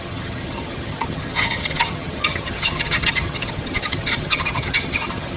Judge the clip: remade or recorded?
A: remade